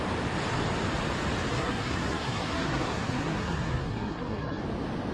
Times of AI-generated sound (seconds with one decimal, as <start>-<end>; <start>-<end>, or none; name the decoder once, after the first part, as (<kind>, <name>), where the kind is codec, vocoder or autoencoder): 1.5-4.6 (codec, SNAC)